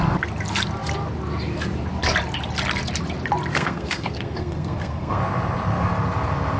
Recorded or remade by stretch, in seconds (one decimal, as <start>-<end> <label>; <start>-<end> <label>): 0.0-3.5 recorded; 3.5-5.2 remade; 5.2-6.6 recorded